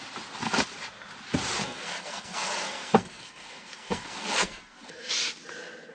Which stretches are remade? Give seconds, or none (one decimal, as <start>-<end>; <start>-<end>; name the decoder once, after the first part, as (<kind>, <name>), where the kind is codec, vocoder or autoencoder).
1.6-5.1 (codec, SNAC)